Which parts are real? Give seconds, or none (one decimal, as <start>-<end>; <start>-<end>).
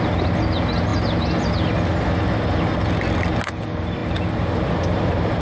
0.0-5.4